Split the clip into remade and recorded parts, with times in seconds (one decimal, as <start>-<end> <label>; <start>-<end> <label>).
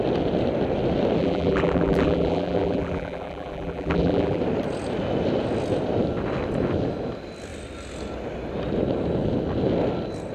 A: 0.0-1.2 recorded; 1.2-4.4 remade; 4.4-10.3 recorded